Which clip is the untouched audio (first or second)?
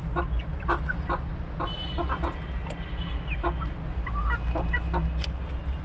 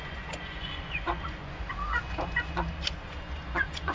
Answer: first